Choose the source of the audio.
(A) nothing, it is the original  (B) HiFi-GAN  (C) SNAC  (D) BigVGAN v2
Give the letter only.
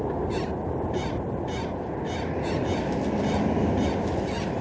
A